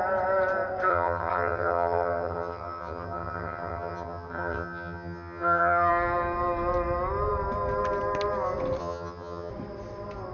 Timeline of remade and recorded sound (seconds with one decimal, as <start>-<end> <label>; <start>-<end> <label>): 0.0-0.9 recorded; 0.9-5.9 remade; 5.9-8.8 recorded; 8.8-9.5 remade; 9.5-10.3 recorded